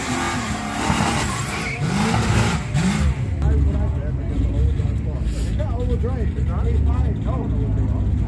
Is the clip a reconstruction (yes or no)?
no